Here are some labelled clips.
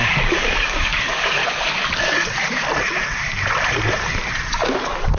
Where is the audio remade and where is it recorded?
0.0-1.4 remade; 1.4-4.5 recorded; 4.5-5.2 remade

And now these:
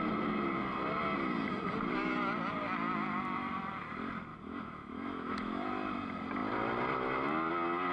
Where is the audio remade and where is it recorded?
0.0-4.3 recorded; 4.3-5.7 remade; 5.7-7.9 recorded

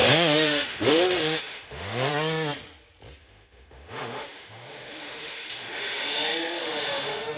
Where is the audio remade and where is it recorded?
0.0-2.1 remade; 2.1-3.2 recorded; 3.2-7.4 remade

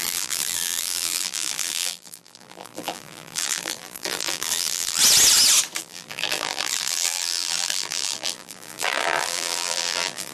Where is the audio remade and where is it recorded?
0.0-5.0 remade; 5.0-5.8 recorded; 5.8-10.3 remade

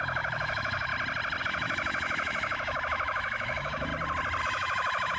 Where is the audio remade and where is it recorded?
0.0-0.9 remade; 0.9-1.4 recorded; 1.4-3.9 remade; 3.9-4.4 recorded; 4.4-5.2 remade

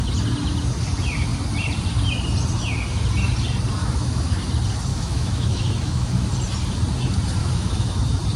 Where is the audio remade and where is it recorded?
0.0-3.8 recorded; 3.8-4.4 remade; 4.4-4.9 recorded; 4.9-6.3 remade; 6.3-7.4 recorded; 7.4-8.0 remade; 8.0-8.4 recorded